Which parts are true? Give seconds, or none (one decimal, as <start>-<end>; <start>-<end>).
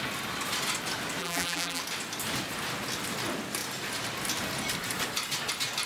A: 0.0-1.2; 1.8-5.9